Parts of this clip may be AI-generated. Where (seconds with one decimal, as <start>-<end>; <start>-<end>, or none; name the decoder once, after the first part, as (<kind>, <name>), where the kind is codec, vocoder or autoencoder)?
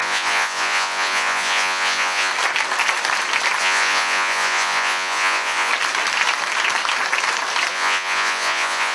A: 0.0-2.3 (vocoder, Vocos); 3.6-5.7; 7.7-8.9